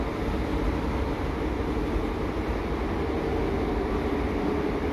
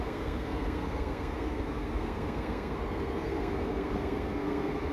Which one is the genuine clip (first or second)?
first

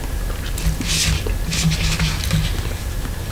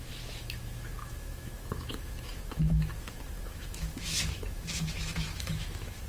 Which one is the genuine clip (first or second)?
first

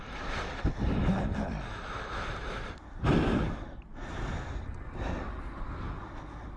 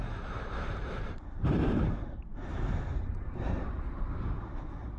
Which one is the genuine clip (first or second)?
first